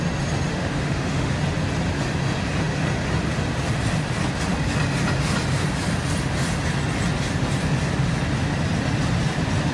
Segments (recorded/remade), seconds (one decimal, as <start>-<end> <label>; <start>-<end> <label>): 0.0-0.5 recorded; 0.5-1.4 remade; 1.4-9.7 recorded